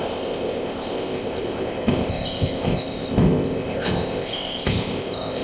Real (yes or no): no